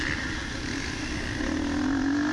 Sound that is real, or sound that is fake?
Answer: real